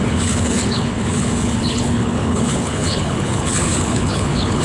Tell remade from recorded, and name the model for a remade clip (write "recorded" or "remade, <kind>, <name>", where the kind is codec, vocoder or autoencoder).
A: remade, codec, HILCodec